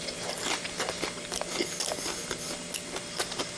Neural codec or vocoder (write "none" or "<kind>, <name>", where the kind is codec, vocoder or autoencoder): none